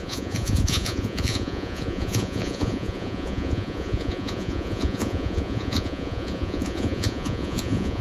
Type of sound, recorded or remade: remade